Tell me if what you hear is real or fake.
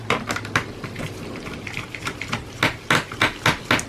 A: real